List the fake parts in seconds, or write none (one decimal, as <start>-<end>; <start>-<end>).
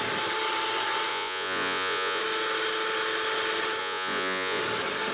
1.1-2.2; 3.8-4.6